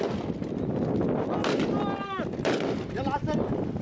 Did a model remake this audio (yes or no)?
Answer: no